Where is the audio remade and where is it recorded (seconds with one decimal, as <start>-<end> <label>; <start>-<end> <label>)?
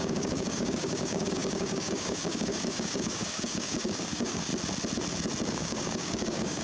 0.0-4.5 remade; 4.5-5.5 recorded; 5.5-6.6 remade